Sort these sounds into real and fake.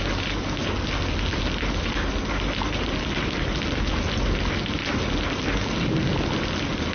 real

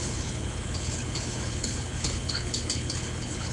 fake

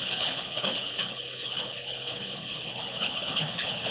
fake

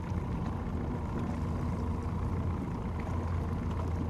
real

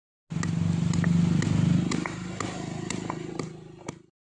real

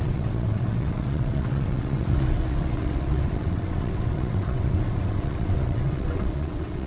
fake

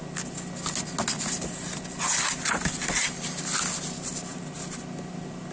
real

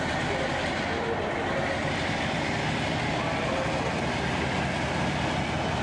real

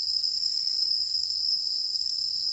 fake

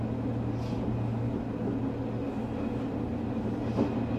real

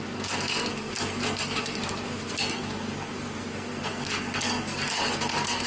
fake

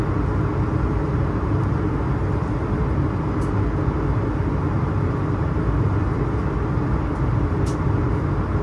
real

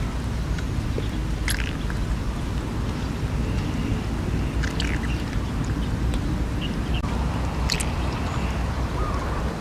real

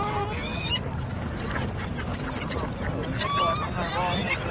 real